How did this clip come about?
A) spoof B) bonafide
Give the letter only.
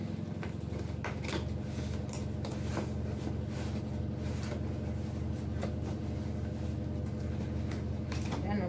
B